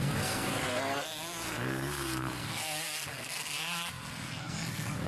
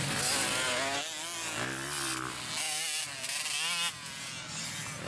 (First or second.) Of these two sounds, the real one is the second